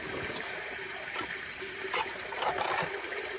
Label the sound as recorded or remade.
remade